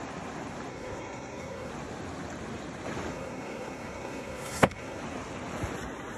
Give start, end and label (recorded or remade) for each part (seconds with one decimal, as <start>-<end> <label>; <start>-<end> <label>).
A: 0.0-0.7 recorded; 0.7-1.7 remade; 1.7-3.1 recorded; 3.1-5.0 remade; 5.0-6.2 recorded